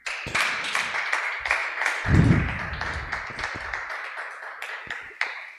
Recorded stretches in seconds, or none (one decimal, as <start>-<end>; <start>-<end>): 0.0-5.6